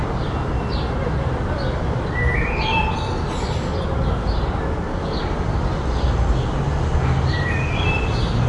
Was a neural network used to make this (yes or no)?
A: no